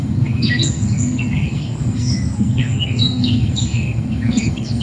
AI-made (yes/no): yes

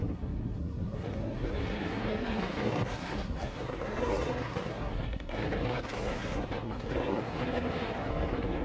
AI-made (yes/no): yes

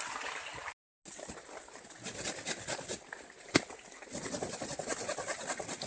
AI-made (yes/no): no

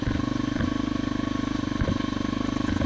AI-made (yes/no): no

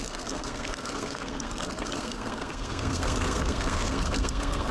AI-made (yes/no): yes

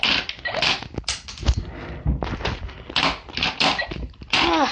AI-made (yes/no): no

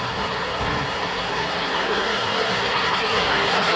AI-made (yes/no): yes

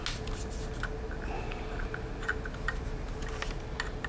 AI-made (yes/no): no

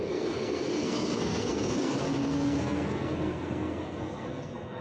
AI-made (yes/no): yes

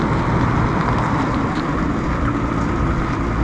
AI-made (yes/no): no